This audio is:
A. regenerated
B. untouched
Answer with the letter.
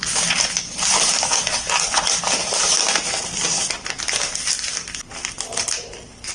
B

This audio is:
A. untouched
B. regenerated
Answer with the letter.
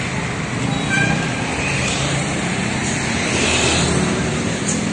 A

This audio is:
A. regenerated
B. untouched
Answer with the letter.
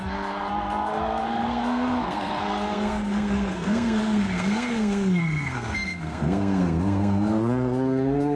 A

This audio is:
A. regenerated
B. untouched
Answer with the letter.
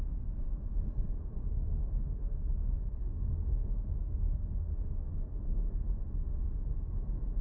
A